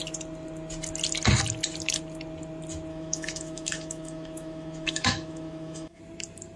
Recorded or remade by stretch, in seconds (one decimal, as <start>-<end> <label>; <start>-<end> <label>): 0.0-2.9 recorded; 2.9-6.0 remade; 6.0-6.6 recorded